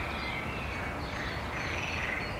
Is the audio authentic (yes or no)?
yes